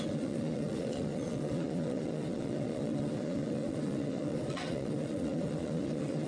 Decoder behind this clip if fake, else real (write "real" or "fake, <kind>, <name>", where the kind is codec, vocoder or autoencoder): fake, vocoder, Vocos